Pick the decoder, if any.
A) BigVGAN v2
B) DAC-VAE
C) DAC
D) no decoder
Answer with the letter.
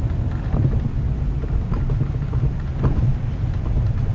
D